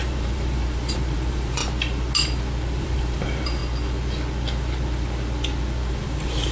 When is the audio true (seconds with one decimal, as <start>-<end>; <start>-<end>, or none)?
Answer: 1.6-2.8; 3.6-5.9